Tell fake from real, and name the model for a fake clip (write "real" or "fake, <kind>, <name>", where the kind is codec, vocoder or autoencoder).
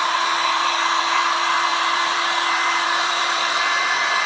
fake, vocoder, BigVGAN v2